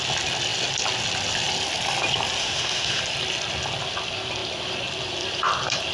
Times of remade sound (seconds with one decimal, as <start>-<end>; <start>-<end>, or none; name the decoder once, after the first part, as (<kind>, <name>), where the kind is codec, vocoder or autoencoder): 2.4-3.0 (autoencoder, DAC-VAE)